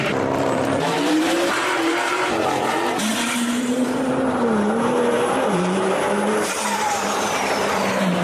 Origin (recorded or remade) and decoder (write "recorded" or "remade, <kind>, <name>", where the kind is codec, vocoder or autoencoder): remade, vocoder, BigVGAN v2